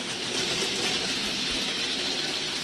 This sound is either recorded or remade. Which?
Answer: remade